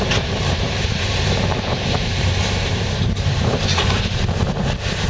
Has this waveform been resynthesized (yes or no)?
yes